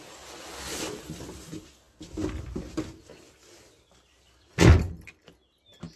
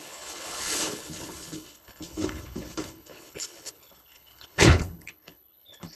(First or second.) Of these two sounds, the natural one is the first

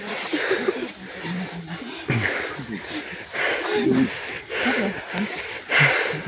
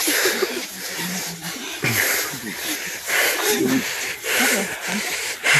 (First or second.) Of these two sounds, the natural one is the first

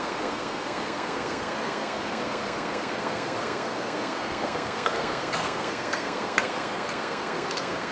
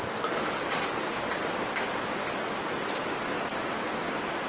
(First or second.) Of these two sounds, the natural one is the second